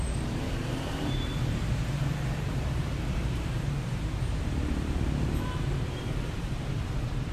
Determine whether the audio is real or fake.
fake